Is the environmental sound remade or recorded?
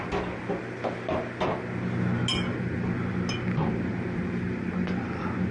recorded